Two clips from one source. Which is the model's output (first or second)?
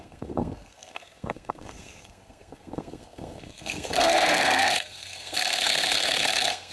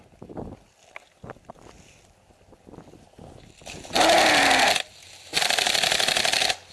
first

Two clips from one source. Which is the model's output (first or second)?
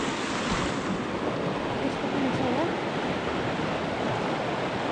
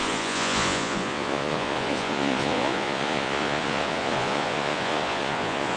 second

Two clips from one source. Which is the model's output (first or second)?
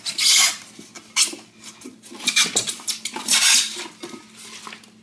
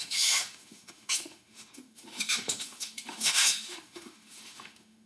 second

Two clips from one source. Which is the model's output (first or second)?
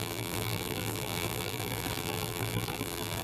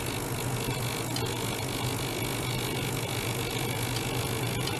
first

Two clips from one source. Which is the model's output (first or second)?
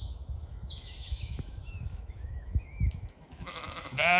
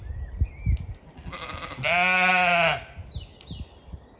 first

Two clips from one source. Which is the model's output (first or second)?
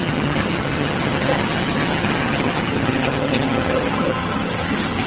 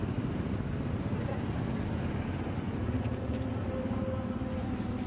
first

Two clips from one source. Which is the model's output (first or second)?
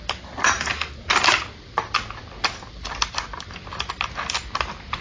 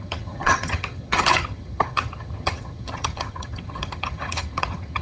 second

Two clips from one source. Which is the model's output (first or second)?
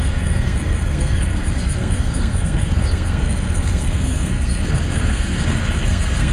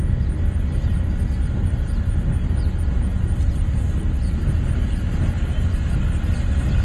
first